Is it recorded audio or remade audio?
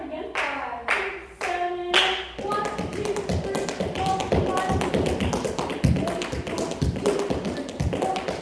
recorded